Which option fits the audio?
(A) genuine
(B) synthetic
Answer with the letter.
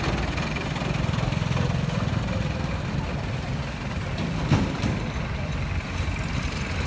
A